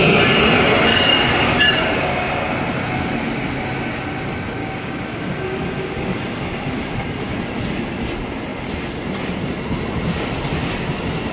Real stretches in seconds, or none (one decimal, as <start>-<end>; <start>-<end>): 0.0-0.9; 2.5-4.6; 7.4-11.3